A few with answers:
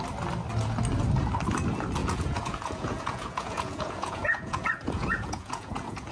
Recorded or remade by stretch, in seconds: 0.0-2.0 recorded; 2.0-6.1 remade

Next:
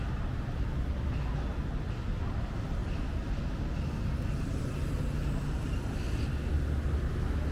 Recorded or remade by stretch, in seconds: 0.0-7.5 recorded

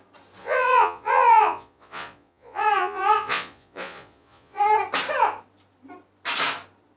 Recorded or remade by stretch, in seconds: 0.0-0.4 recorded; 0.4-4.6 remade; 4.6-7.0 recorded

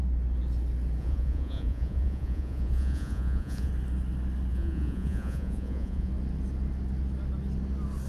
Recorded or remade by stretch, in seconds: 0.0-1.0 recorded; 1.0-3.7 remade; 3.7-4.5 recorded; 4.5-6.1 remade; 6.1-8.1 recorded